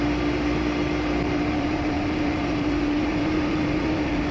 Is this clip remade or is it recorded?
remade